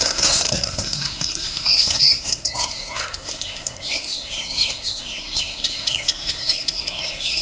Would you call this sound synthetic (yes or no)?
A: yes